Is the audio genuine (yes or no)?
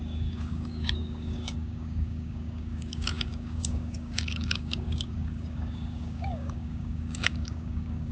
no